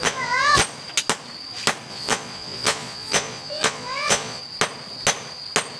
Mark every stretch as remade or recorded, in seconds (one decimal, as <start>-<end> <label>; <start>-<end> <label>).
0.0-0.6 remade; 0.6-1.9 recorded; 1.9-4.4 remade; 4.4-5.8 recorded